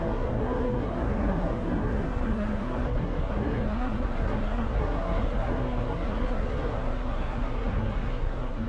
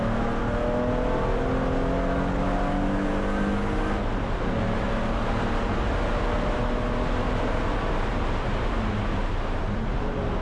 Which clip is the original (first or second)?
second